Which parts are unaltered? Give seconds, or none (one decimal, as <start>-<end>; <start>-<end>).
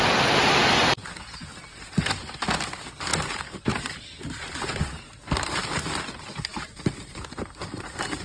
0.0-3.1; 4.0-8.2